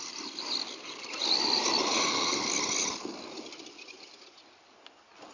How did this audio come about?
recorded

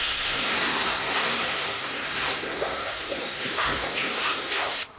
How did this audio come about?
remade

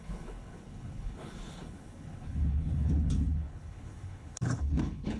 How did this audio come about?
remade